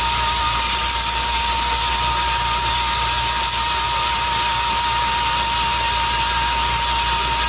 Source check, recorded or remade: recorded